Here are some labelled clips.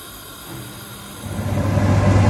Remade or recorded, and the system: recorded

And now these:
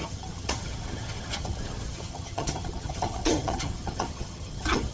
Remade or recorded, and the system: remade, vocoder, HiFi-GAN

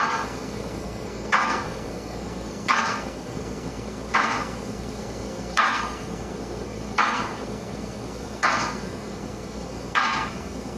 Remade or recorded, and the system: remade, codec, SNAC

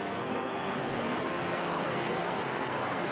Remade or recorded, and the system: remade, codec, SNAC